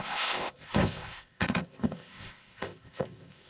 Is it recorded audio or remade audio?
remade